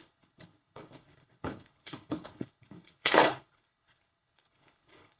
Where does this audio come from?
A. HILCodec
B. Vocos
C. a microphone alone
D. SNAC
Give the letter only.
A